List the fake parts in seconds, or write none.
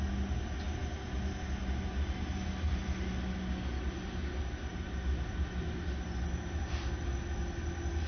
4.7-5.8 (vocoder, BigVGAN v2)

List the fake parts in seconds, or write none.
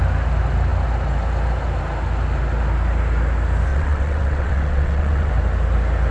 3.7-5.3 (vocoder, WaveNeXt)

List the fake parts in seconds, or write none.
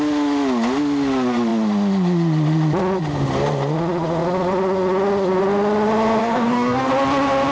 6.2-6.9 (codec, DAC)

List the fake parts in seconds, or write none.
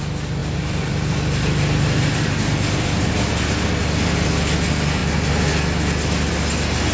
0.4-3.0 (vocoder, BigVGAN v2)